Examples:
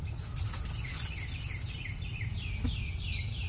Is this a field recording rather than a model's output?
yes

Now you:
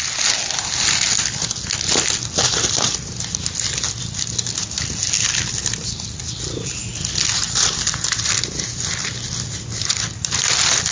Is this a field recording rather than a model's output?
yes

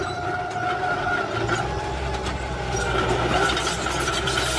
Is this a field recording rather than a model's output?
yes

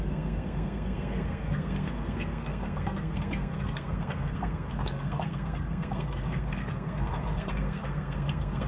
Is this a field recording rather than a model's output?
no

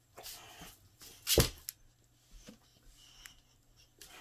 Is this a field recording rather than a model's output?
yes